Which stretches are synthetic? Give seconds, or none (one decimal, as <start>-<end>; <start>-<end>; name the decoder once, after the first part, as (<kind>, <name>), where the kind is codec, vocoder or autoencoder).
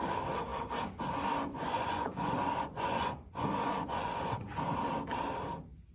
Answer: 1.5-4.6 (vocoder, Vocos)